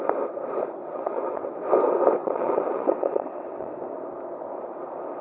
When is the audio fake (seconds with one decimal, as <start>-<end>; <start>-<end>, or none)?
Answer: 0.8-1.5; 2.2-3.7